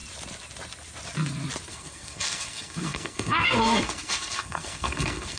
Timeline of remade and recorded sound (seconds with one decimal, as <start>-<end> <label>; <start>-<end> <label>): 0.0-1.7 recorded; 1.7-5.4 remade